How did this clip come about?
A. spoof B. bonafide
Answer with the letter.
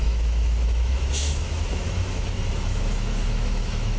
A